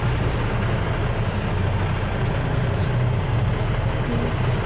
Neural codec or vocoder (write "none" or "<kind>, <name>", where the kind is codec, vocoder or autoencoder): none